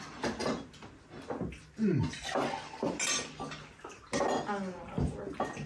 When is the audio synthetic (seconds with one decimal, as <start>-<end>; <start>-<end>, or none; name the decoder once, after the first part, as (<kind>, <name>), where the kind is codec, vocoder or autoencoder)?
none

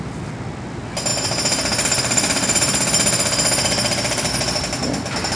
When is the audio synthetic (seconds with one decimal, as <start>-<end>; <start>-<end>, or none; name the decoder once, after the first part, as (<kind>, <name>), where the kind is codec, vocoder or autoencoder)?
none

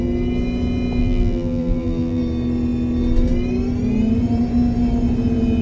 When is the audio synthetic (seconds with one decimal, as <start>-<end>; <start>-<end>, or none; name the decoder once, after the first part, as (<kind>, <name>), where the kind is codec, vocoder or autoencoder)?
1.0-2.2 (vocoder, BigVGAN v2)

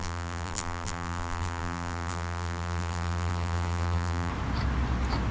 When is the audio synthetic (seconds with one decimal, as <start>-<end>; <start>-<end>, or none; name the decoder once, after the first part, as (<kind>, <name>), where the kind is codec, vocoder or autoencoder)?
0.0-4.3 (vocoder, BigVGAN v2)